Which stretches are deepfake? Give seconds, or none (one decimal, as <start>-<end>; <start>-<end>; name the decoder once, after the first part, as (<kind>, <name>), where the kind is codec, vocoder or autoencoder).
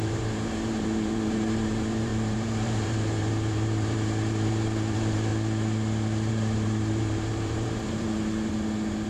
0.0-5.3 (vocoder, BigVGAN v2); 6.3-9.1